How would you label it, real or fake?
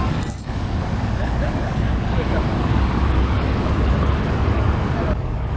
fake